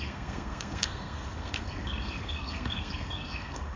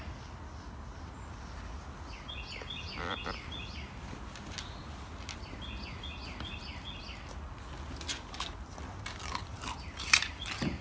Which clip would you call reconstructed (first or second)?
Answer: first